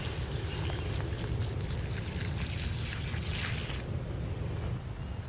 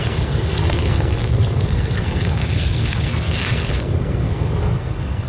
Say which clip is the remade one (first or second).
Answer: second